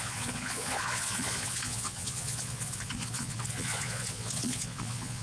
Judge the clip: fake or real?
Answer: fake